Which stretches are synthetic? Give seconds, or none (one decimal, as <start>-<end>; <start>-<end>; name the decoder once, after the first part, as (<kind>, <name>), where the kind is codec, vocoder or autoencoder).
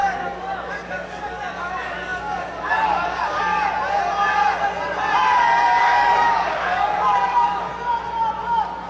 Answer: 0.0-3.6 (codec, DAC); 5.8-7.7; 8.4-8.9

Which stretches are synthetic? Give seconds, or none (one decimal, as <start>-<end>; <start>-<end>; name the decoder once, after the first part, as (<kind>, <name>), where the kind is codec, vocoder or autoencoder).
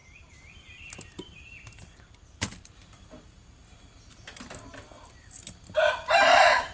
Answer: none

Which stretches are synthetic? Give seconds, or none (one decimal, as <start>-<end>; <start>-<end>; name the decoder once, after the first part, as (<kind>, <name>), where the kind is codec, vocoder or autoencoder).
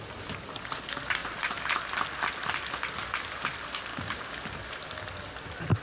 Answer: 3.9-4.4 (codec, DAC)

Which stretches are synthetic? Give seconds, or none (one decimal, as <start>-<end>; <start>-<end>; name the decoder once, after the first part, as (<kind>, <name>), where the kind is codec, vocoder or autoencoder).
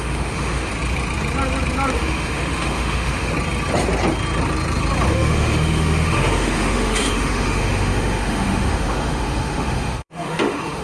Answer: 0.0-0.7 (autoencoder, DAC-VAE); 1.9-3.3; 5.1-10.8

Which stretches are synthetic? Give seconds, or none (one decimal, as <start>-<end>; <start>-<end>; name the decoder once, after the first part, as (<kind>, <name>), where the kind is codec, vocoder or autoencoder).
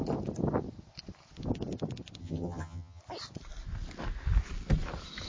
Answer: 2.2-3.0 (vocoder, HiFi-GAN)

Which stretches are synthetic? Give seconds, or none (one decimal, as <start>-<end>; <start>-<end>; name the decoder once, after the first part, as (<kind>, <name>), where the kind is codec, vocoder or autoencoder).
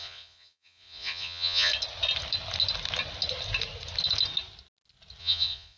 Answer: 0.0-1.7 (vocoder, Vocos); 5.2-5.8